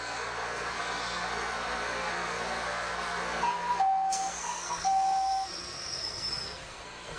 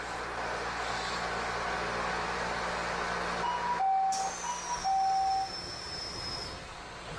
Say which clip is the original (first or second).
second